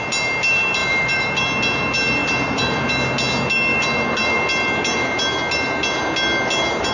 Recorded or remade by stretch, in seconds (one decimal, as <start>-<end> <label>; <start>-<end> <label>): 0.0-0.8 recorded; 0.8-1.4 remade; 1.4-2.2 recorded; 2.2-2.9 remade; 2.9-6.9 recorded